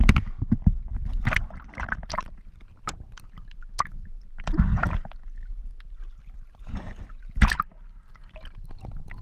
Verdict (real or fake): real